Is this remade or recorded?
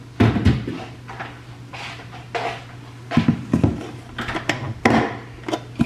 recorded